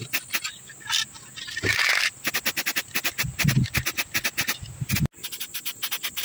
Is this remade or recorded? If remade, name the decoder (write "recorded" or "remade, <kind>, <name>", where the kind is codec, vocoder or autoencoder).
recorded